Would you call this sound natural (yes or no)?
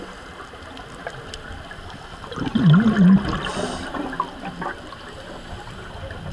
yes